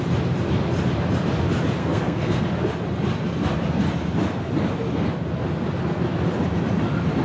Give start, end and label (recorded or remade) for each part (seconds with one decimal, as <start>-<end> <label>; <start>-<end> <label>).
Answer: 0.0-1.8 recorded; 1.8-2.4 remade; 2.4-7.2 recorded